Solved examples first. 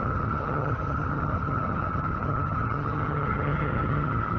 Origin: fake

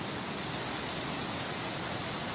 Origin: real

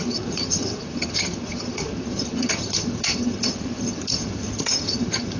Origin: fake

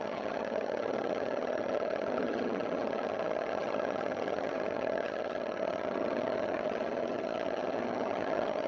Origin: fake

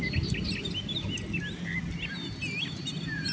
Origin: real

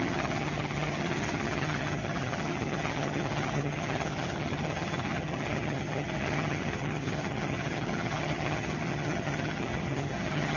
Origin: fake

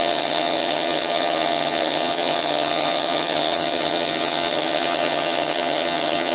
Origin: fake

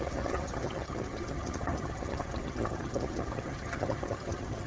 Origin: fake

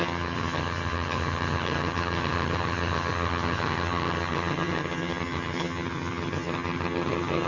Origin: fake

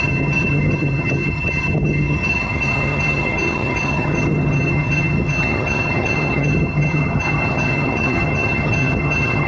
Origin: fake